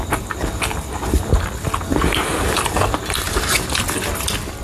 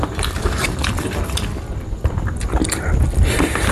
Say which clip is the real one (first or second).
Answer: first